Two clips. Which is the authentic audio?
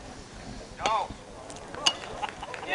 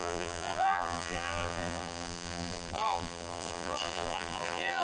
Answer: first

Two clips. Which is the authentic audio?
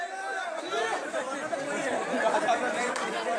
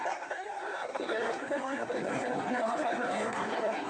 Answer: first